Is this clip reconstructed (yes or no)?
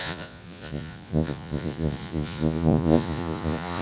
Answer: yes